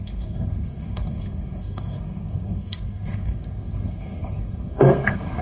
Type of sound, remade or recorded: remade